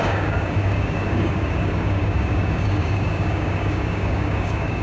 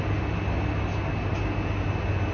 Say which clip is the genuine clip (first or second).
second